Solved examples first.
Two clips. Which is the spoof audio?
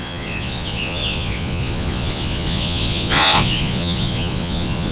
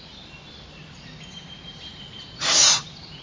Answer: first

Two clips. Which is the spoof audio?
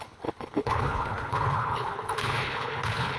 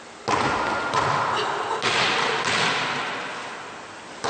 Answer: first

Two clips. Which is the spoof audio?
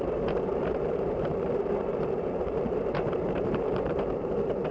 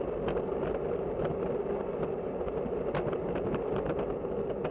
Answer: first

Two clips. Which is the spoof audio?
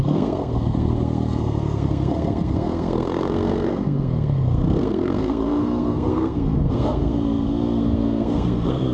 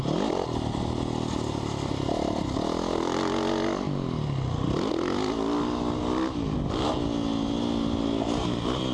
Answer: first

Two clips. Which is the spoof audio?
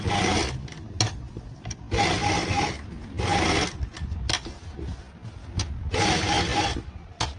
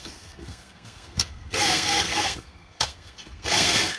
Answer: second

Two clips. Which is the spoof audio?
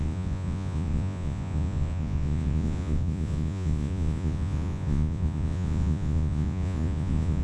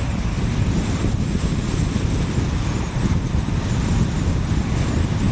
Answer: first